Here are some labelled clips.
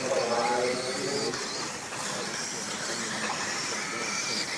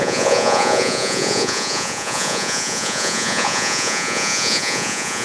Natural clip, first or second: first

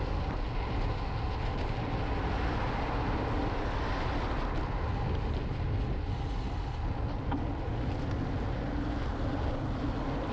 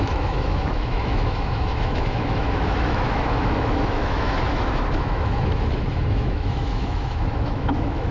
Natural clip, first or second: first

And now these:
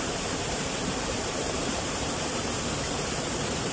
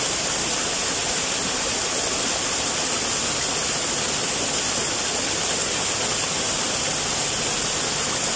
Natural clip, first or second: second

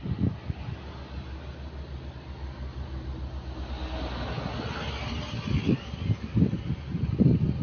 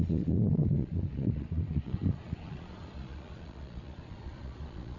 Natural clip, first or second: first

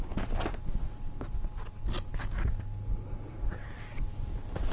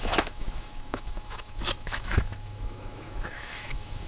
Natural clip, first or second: first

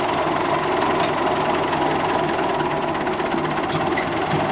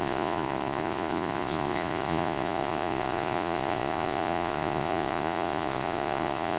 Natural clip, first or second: first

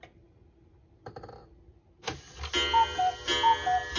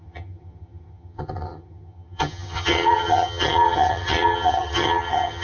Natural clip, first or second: first